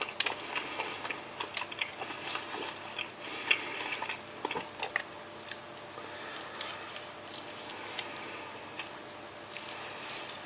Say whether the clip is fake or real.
real